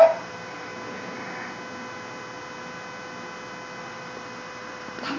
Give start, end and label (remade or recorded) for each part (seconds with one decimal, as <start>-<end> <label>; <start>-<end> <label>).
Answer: 0.0-0.7 remade; 0.7-3.8 recorded; 3.8-5.2 remade